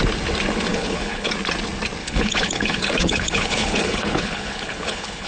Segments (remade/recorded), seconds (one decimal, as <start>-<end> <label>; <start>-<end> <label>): 0.0-0.7 recorded; 0.7-1.3 remade; 1.3-2.0 recorded; 2.0-5.3 remade